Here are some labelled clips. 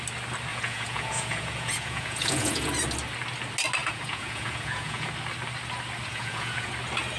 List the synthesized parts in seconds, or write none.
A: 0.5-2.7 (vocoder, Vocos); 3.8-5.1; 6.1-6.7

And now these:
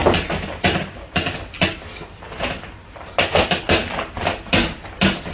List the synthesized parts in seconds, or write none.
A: none